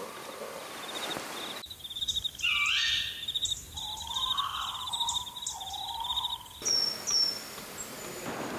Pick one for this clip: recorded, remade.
recorded